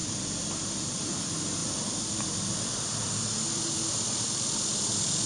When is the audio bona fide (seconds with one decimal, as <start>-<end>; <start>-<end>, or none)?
none